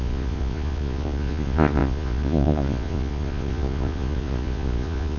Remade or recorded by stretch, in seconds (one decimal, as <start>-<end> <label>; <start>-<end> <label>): 0.0-5.2 remade